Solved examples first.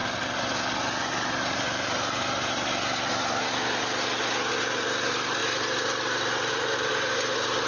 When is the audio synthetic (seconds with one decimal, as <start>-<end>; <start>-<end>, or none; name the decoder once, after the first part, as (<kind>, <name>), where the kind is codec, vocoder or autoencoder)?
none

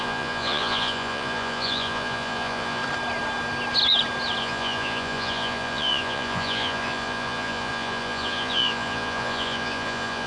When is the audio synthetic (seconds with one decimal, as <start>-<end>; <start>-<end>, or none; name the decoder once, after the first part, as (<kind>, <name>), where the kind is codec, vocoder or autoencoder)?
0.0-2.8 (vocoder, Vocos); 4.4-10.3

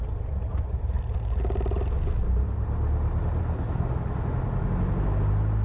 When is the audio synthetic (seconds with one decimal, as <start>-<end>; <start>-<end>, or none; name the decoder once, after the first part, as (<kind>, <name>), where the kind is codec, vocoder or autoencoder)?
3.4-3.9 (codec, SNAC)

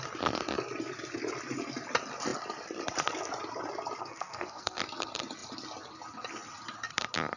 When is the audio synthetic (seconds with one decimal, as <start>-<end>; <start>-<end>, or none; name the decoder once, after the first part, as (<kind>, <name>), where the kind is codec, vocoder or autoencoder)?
4.0-4.8 (codec, SNAC)